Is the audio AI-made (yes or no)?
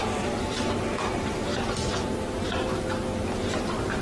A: no